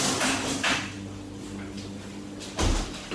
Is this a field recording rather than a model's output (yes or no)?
yes